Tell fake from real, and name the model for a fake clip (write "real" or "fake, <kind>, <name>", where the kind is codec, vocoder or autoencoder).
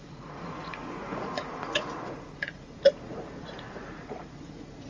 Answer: fake, vocoder, Vocos